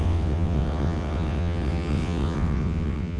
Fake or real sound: fake